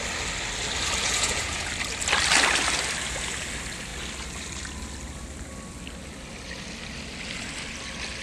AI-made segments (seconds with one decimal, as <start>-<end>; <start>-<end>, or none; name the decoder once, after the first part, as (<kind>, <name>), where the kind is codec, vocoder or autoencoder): 1.0-1.7 (vocoder, Vocos)